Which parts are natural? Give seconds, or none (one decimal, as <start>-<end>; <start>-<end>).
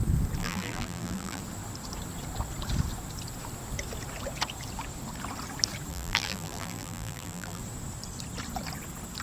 0.0-0.4; 1.4-5.9; 7.6-9.2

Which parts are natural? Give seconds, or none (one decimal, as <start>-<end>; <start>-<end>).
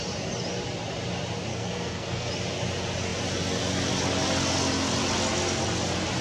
0.0-1.5; 2.3-6.2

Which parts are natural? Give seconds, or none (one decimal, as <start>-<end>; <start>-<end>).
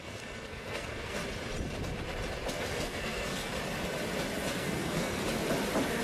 1.2-2.5; 3.5-4.5; 5.2-6.0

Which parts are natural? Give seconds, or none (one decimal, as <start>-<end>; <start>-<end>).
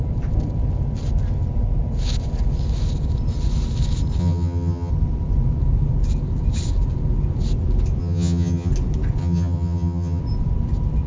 0.0-4.2; 4.9-8.0; 8.7-9.2; 10.2-11.1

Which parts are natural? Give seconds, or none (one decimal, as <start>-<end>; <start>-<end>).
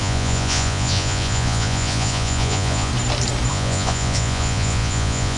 2.9-3.5